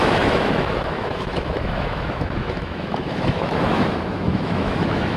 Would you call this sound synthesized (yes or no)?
yes